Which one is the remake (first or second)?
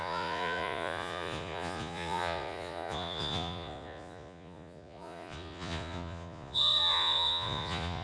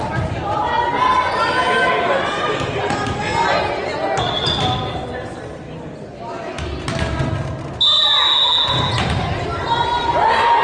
first